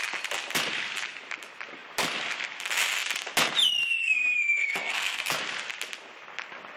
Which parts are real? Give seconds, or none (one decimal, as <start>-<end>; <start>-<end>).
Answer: 0.0-4.0; 5.4-6.8